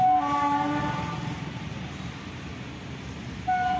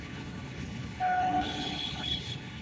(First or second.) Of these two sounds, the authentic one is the first